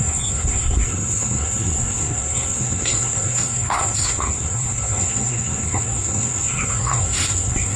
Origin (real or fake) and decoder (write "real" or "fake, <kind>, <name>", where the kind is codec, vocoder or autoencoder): fake, codec, SNAC